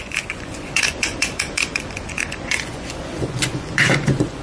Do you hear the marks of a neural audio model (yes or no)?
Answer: yes